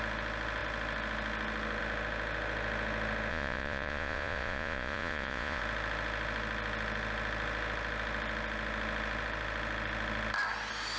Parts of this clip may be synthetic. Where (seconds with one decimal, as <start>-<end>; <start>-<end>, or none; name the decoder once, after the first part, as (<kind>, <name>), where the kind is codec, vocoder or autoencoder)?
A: 3.3-5.6 (vocoder, Vocos)